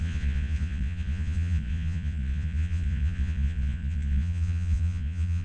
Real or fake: fake